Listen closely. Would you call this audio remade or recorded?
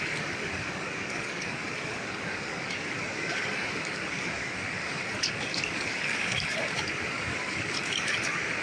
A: remade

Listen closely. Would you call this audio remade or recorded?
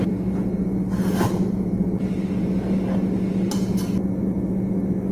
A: recorded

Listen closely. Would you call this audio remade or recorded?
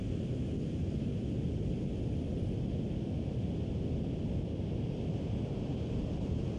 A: recorded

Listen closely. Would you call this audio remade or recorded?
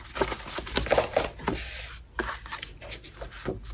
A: recorded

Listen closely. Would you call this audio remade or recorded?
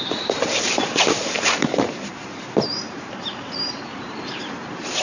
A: remade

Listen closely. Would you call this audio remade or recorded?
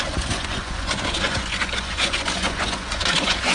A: remade